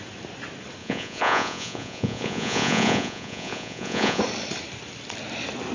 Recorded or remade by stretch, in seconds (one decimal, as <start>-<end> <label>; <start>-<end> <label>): 0.0-0.8 recorded; 0.8-4.2 remade; 4.2-5.7 recorded